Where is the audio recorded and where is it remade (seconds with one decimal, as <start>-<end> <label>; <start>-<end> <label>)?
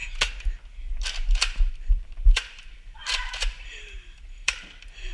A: 0.0-1.7 recorded; 1.7-5.1 remade